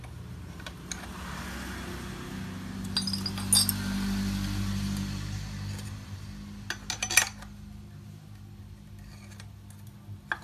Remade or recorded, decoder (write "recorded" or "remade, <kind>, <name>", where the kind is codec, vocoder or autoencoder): recorded